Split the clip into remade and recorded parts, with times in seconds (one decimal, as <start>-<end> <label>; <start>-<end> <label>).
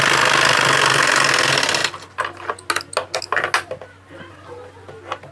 0.0-5.3 recorded